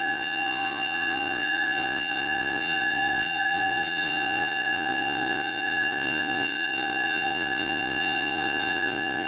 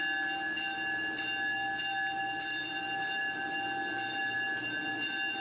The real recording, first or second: second